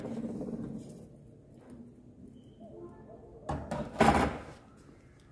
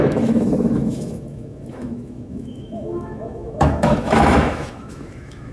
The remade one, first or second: second